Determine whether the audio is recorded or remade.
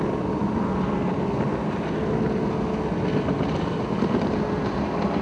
recorded